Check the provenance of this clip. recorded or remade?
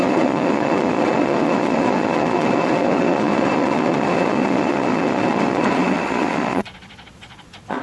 remade